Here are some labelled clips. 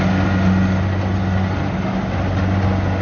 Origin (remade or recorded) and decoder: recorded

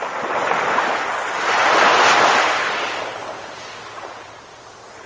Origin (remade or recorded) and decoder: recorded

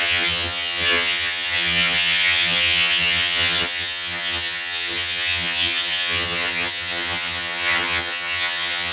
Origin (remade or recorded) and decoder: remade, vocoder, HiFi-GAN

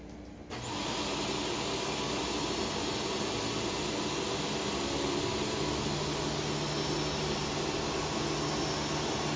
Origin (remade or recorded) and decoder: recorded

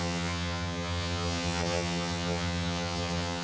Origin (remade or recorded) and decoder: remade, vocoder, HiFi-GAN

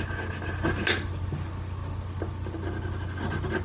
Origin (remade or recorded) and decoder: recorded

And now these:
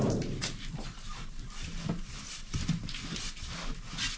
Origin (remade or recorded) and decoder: recorded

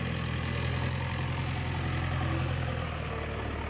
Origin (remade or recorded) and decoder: recorded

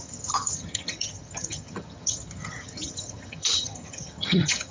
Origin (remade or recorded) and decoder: remade, vocoder, HiFi-GAN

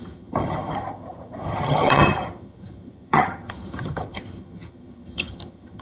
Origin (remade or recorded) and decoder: remade, vocoder, HiFi-GAN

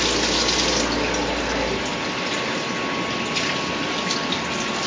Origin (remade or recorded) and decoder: recorded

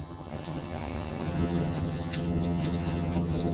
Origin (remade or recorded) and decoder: remade, vocoder, HiFi-GAN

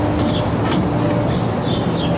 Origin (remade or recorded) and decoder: recorded